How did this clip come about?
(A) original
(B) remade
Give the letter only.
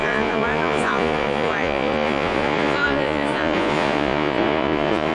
B